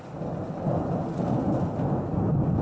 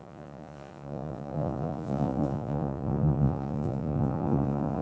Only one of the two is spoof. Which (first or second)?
second